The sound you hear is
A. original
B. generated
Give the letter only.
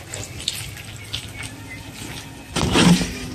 A